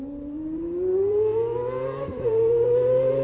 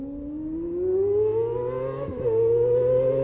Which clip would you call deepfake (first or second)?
first